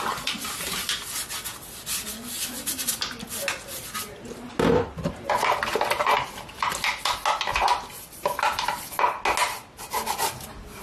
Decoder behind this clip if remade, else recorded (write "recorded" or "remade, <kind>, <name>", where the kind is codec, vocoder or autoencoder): recorded